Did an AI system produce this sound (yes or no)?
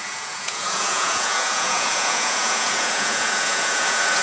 yes